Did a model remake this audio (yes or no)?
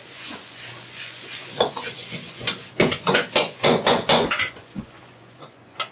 yes